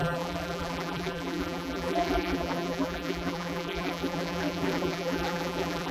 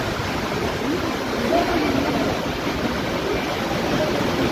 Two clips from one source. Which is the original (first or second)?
second